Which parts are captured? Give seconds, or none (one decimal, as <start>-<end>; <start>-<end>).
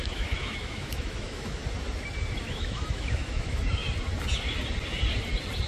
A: 1.6-2.4; 3.8-5.7